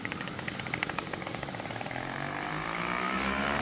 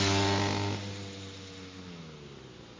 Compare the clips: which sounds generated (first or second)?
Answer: first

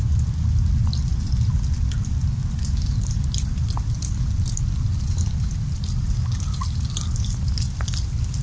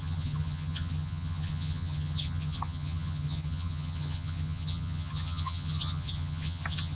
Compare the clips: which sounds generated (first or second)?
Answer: second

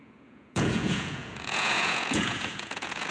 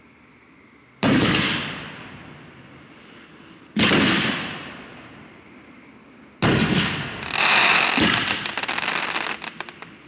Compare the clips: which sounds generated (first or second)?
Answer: first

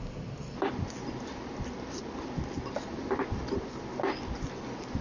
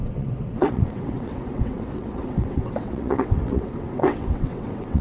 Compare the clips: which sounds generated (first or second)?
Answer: second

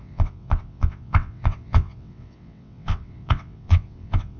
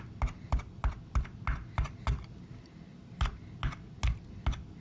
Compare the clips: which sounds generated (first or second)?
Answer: first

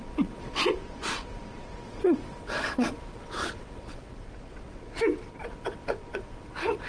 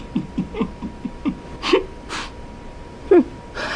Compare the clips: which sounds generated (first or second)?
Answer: first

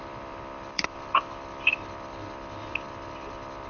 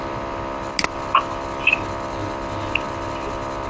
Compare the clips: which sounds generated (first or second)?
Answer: first